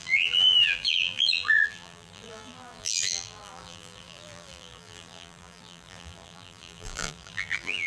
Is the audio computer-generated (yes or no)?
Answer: yes